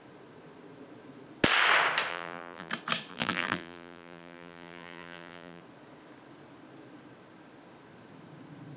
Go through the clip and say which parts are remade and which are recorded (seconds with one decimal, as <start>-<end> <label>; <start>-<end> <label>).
0.0-2.1 recorded; 2.1-2.7 remade; 2.7-3.1 recorded; 3.1-5.6 remade; 5.6-8.8 recorded